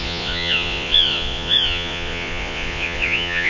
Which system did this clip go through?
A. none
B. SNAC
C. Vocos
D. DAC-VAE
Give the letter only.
C